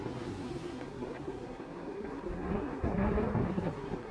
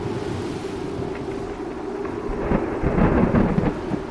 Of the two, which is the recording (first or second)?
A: second